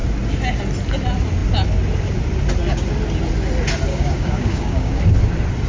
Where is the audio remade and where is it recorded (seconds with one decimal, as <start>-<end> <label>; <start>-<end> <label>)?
0.0-3.9 recorded; 3.9-5.0 remade; 5.0-5.7 recorded